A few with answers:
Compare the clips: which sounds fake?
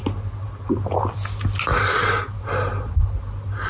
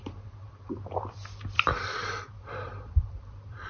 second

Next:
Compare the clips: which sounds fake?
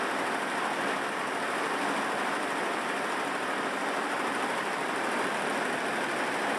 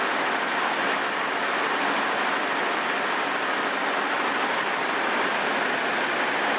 first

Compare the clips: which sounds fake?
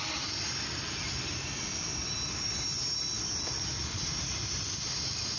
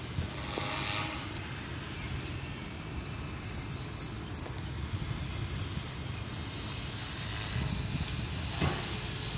first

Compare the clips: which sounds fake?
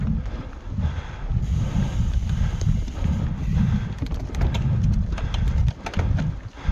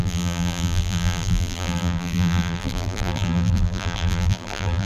second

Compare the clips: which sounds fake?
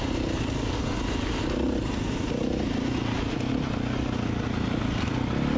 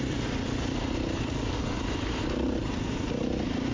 second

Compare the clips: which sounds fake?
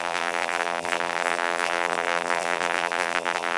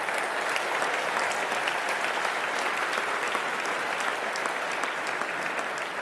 first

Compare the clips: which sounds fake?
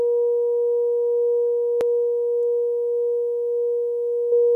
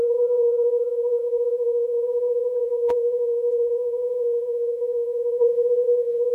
second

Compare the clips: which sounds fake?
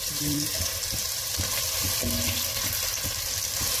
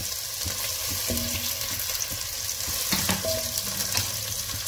first